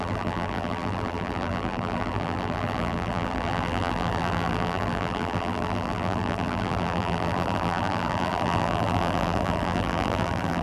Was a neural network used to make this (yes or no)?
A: yes